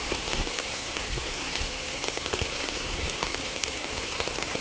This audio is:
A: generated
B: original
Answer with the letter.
A